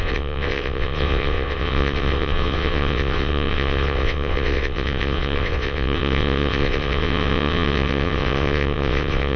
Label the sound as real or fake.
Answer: fake